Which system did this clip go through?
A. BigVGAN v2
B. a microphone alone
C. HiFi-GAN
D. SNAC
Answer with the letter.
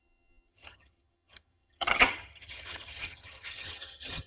C